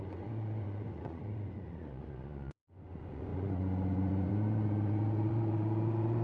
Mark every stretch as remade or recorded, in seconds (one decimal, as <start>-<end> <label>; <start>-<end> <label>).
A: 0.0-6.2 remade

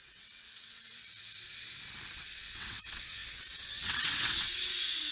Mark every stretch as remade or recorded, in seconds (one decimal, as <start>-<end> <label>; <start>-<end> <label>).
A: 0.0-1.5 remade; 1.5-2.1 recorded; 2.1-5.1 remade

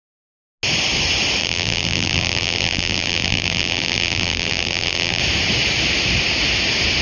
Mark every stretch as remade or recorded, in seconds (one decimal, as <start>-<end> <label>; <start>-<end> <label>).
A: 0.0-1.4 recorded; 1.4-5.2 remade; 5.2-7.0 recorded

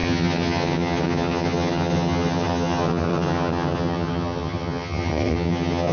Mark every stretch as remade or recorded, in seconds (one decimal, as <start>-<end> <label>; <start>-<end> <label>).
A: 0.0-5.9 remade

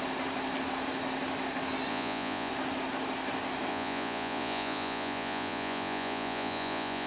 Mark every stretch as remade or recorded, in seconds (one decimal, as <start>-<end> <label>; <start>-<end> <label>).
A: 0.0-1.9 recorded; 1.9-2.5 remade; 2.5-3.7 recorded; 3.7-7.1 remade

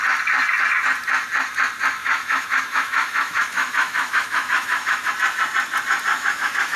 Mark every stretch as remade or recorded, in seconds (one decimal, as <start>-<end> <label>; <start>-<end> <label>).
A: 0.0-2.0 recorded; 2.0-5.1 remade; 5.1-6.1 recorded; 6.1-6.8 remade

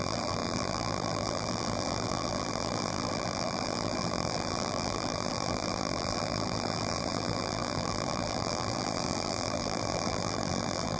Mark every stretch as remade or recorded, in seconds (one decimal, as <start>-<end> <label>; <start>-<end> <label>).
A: 0.0-11.0 remade